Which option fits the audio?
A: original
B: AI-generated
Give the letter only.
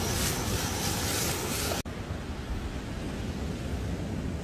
A